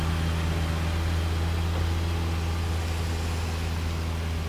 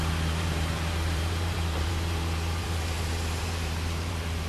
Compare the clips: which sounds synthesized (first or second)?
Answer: second